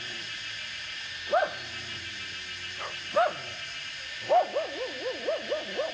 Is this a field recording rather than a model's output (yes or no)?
yes